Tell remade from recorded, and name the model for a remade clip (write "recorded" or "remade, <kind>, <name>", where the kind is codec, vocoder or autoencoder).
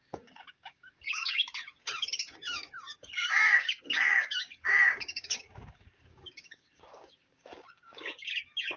remade, codec, DAC